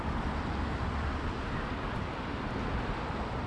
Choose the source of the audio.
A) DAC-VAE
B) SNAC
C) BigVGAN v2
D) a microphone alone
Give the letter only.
C